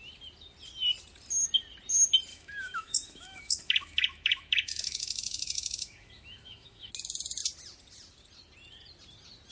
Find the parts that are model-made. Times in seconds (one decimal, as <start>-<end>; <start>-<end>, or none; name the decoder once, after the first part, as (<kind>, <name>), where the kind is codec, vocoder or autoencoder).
2.3-6.9 (autoencoder, DAC-VAE)